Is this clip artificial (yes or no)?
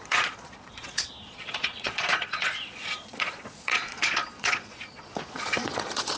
yes